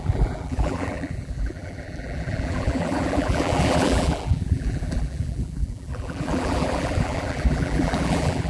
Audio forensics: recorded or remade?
remade